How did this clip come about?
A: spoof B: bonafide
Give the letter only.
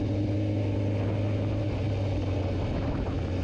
B